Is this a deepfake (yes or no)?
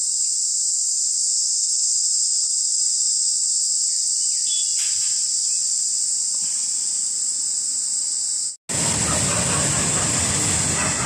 no